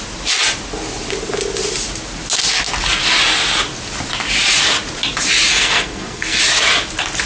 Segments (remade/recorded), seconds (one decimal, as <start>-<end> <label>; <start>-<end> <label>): 0.0-5.5 recorded; 5.5-6.4 remade; 6.4-7.3 recorded